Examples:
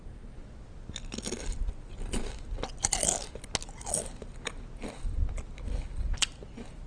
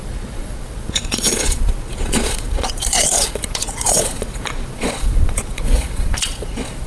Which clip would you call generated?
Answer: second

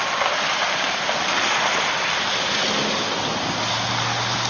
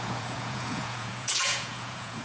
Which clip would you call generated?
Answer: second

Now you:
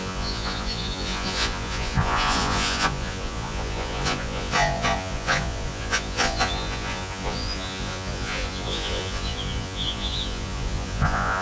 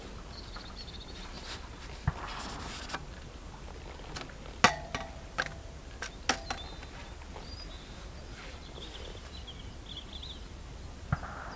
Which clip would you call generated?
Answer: first